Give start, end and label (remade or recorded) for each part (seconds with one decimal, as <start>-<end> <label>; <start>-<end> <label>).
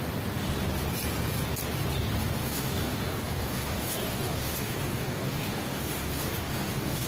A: 0.0-2.4 recorded; 2.4-7.1 remade